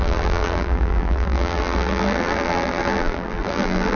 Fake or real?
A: fake